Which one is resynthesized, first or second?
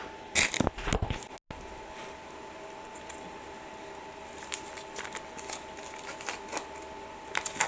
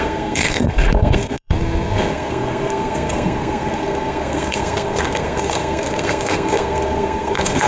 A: second